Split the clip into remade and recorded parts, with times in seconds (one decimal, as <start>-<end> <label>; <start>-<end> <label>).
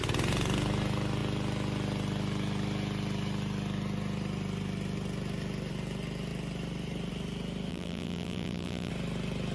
0.0-7.7 recorded; 7.7-8.9 remade; 8.9-9.5 recorded